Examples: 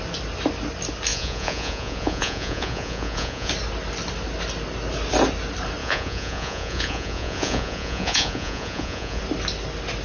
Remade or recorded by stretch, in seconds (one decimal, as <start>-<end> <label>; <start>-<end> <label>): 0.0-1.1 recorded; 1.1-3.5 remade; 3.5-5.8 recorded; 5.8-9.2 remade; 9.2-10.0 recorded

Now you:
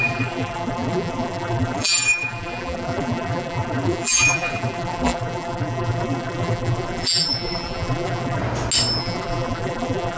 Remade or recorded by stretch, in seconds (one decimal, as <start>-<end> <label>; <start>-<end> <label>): 0.0-8.4 remade; 8.4-9.0 recorded; 9.0-10.2 remade

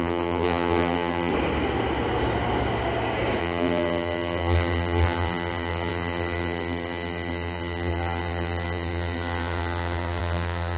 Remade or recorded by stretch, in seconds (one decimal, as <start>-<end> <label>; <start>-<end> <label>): 0.0-1.3 remade; 1.3-3.4 recorded; 3.4-10.8 remade

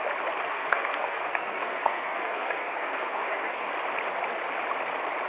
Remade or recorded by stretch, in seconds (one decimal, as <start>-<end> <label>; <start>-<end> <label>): 0.0-0.5 recorded; 0.5-3.7 remade; 3.7-5.3 recorded

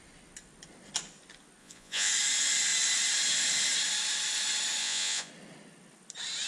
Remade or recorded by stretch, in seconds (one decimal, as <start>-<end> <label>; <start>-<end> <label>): 0.0-1.6 recorded; 1.6-2.1 remade; 2.1-4.8 recorded; 4.8-5.3 remade; 5.3-6.5 recorded

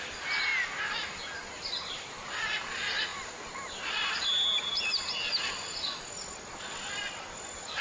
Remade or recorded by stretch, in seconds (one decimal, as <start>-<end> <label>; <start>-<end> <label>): 0.0-0.5 remade; 0.5-1.5 recorded; 1.5-3.1 remade; 3.1-4.3 recorded; 4.3-7.8 remade

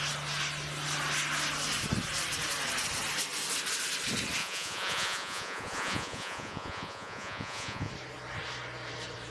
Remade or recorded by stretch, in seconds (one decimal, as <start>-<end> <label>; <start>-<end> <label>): 0.0-4.4 recorded; 4.4-7.9 remade; 7.9-9.3 recorded